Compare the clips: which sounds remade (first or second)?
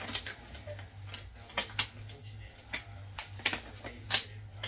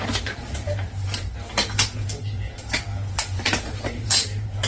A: second